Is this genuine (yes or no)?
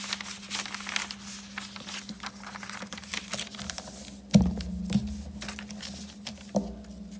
yes